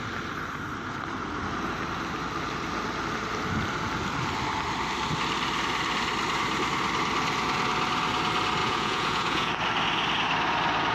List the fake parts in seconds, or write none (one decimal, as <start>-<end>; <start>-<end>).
8.6-9.5